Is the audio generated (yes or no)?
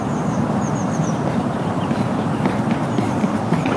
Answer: yes